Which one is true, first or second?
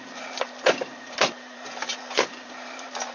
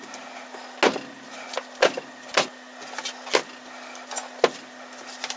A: second